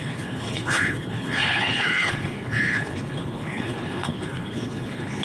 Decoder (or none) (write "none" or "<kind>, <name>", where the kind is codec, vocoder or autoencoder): codec, HILCodec